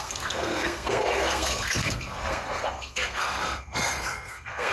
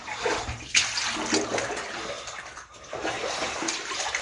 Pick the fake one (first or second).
first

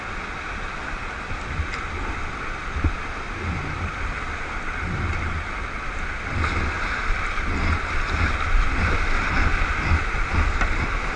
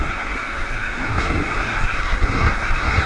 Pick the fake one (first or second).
second